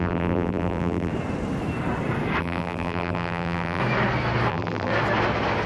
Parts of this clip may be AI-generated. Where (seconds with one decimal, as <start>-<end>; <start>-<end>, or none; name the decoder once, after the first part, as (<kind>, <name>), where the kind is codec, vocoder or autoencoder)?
0.0-1.1 (vocoder, BigVGAN v2); 2.4-3.8; 4.5-4.9